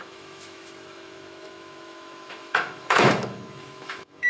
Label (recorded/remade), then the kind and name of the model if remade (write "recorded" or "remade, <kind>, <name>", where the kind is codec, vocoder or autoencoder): remade, autoencoder, DAC-VAE